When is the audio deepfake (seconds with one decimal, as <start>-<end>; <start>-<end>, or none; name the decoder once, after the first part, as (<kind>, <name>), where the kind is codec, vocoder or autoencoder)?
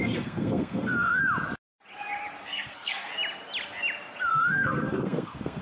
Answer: 0.0-1.2 (codec, SNAC); 2.5-3.1; 4.3-5.6